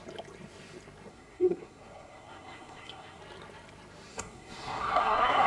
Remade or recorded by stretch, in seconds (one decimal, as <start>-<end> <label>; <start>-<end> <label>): 0.0-1.1 recorded; 1.1-3.2 remade; 3.2-4.1 recorded; 4.1-5.5 remade